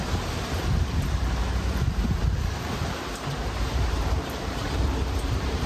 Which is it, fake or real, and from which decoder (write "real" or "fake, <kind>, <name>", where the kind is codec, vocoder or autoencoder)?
fake, vocoder, BigVGAN v2